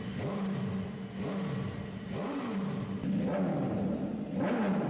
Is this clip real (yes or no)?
yes